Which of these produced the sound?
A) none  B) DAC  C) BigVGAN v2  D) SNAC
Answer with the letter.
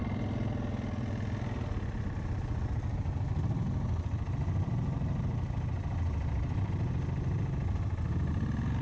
A